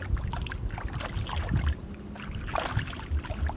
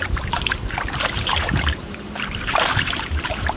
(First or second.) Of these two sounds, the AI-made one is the second